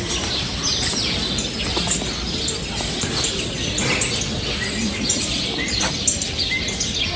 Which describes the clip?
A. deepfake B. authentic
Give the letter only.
B